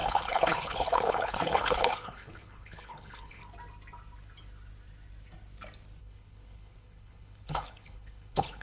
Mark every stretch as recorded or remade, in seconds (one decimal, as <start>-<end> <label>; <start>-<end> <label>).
0.0-3.4 remade; 3.4-6.0 recorded; 6.0-8.6 remade